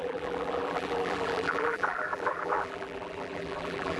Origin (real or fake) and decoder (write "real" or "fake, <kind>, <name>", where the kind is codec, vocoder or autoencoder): fake, vocoder, BigVGAN v2